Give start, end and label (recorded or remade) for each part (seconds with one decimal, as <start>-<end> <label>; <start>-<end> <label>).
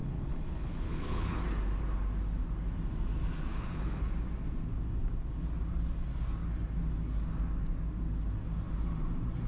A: 0.0-1.4 remade; 1.4-3.5 recorded; 3.5-4.1 remade; 4.1-9.5 recorded